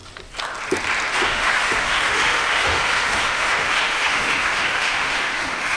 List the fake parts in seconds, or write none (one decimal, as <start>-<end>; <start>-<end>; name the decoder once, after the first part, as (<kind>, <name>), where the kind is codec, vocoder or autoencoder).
1.1-5.8 (autoencoder, DAC-VAE)